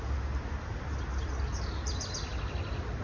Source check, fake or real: real